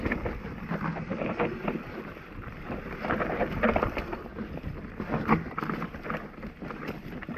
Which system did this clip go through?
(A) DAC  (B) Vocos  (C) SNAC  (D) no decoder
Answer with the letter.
D